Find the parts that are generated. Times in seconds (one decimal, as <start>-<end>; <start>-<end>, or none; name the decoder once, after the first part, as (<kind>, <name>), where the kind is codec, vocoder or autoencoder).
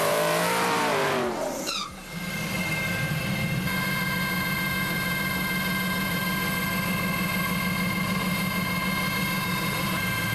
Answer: 0.0-2.0 (vocoder, BigVGAN v2); 2.9-6.2; 8.0-10.3